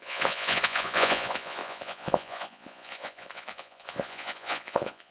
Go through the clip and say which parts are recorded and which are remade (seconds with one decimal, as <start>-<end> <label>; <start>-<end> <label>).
0.0-5.1 remade